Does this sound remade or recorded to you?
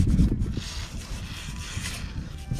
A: remade